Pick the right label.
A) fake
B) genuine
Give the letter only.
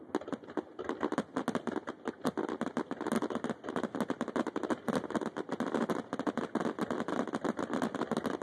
B